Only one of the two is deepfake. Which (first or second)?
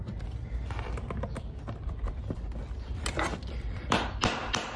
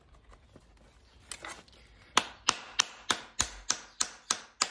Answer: first